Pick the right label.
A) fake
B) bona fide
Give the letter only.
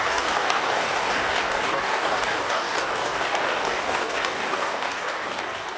A